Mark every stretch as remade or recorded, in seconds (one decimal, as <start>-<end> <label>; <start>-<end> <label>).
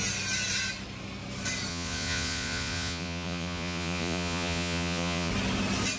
0.0-1.7 recorded; 1.7-5.3 remade; 5.3-6.0 recorded